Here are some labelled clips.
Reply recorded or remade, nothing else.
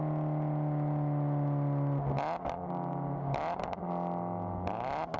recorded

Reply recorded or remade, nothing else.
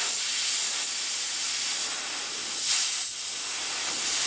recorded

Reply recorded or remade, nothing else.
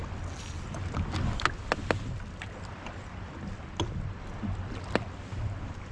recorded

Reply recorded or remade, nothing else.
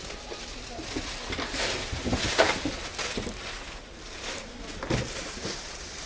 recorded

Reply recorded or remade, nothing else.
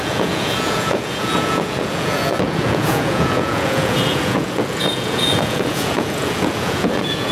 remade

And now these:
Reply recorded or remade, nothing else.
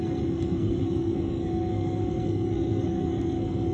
remade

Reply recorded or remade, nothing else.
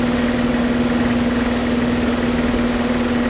recorded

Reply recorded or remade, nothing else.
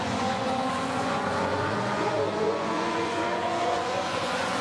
remade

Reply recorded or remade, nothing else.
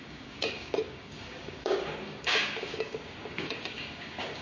remade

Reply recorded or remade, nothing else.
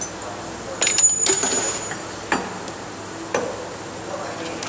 recorded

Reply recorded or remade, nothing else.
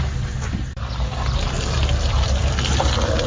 recorded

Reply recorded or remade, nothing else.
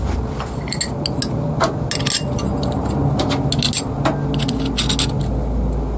recorded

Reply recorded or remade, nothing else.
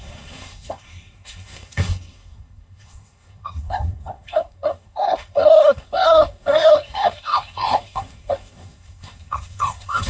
remade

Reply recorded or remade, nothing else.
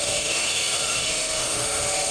remade